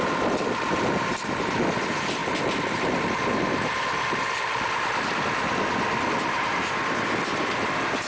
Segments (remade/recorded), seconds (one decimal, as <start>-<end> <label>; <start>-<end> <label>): 0.0-8.1 recorded